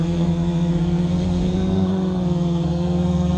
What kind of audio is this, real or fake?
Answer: fake